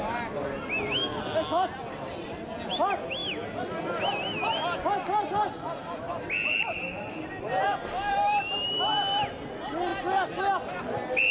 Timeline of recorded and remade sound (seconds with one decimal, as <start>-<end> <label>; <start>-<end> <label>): 0.0-11.3 recorded